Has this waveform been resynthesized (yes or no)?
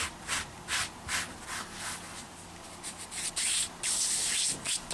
no